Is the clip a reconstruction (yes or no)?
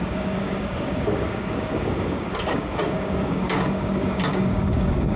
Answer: yes